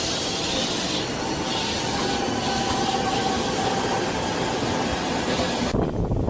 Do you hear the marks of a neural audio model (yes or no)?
no